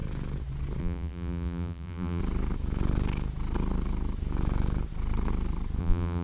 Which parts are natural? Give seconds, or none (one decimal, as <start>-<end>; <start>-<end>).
0.0-0.8; 2.2-5.8